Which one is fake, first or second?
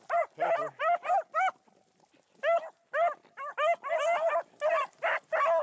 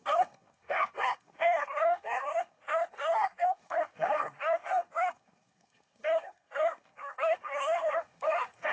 second